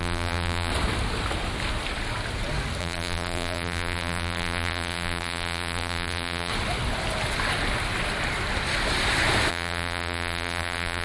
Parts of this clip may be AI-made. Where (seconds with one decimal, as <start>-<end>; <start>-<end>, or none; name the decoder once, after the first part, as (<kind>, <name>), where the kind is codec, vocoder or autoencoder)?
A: 0.0-0.7 (vocoder, BigVGAN v2); 2.8-6.5; 9.5-11.0